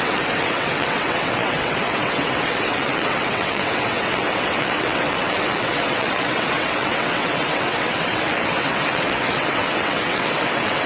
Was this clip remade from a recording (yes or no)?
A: yes